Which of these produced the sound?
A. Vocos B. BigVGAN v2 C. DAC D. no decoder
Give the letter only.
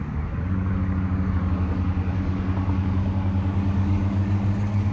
C